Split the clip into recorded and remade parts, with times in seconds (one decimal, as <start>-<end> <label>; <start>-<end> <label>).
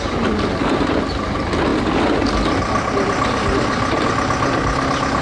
0.0-5.2 recorded